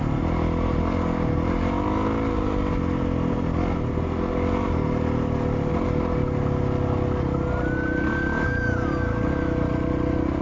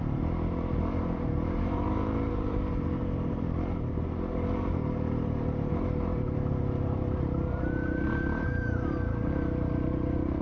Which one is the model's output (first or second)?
second